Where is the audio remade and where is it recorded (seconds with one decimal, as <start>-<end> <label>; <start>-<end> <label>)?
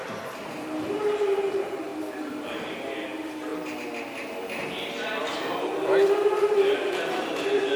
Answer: 0.0-0.6 recorded; 0.6-3.5 remade; 3.5-5.6 recorded; 5.6-7.8 remade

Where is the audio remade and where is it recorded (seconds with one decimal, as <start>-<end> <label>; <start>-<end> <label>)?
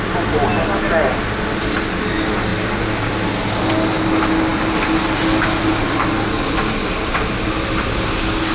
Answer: 0.0-8.5 recorded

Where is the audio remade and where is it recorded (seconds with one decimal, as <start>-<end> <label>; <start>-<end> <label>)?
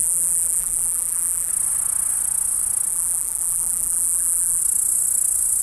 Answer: 0.0-1.5 remade; 1.5-2.9 recorded; 2.9-4.6 remade; 4.6-5.6 recorded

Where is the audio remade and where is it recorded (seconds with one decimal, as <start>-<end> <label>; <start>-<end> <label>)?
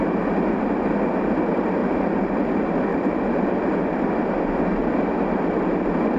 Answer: 0.0-1.8 recorded; 1.8-2.3 remade; 2.3-2.9 recorded; 2.9-3.8 remade; 3.8-6.2 recorded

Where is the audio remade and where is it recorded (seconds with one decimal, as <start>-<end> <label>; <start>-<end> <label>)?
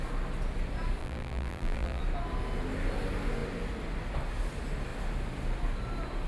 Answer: 0.0-1.0 recorded; 1.0-2.0 remade; 2.0-6.3 recorded